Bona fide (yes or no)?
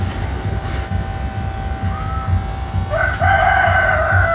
yes